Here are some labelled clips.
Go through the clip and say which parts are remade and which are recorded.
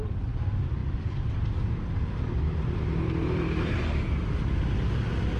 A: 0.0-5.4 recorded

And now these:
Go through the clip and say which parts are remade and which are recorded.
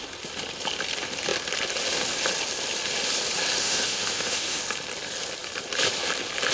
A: 0.0-3.6 recorded; 3.6-4.6 remade; 4.6-6.5 recorded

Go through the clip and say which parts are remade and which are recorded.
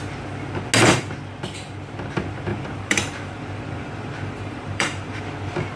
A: 0.0-2.5 recorded; 2.5-5.2 remade; 5.2-5.8 recorded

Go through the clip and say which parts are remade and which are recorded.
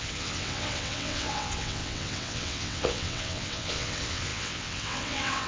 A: 0.0-5.5 remade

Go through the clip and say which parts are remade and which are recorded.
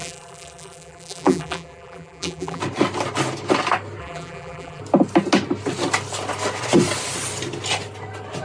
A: 0.0-2.6 remade; 2.6-4.0 recorded; 4.0-4.8 remade; 4.8-8.4 recorded